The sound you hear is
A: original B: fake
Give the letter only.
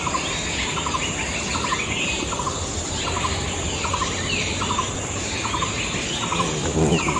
A